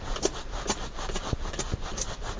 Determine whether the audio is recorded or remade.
recorded